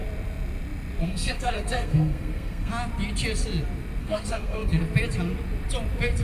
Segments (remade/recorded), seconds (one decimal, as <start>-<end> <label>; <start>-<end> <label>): 0.0-1.0 recorded; 1.0-2.7 remade; 2.7-4.0 recorded; 4.0-4.8 remade; 4.8-6.2 recorded